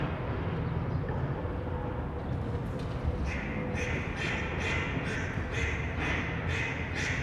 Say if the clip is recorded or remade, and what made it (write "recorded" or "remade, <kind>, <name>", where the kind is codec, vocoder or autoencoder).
recorded